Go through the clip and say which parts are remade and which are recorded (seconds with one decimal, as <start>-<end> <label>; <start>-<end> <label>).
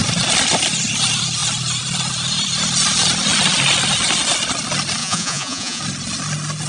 0.0-5.0 recorded; 5.0-5.8 remade; 5.8-6.7 recorded